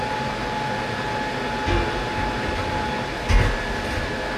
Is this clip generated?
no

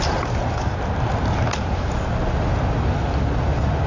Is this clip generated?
no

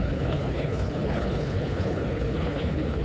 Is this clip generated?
yes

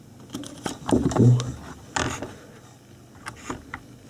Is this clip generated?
no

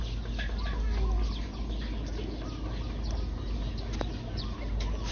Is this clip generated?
no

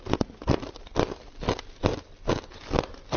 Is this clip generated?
yes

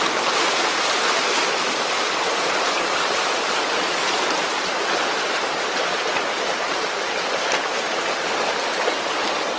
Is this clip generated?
no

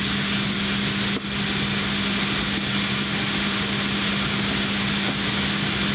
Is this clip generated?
no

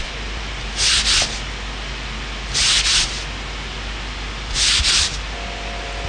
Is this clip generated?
no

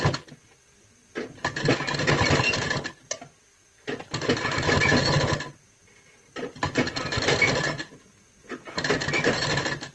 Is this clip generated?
no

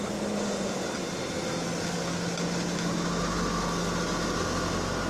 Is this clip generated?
no